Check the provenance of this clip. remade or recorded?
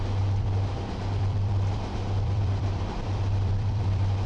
remade